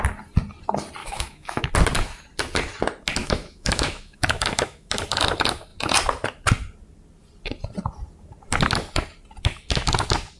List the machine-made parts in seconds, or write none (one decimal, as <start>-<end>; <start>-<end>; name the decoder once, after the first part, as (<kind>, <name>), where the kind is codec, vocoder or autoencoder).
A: 1.0-1.7 (autoencoder, DAC-VAE); 3.2-4.9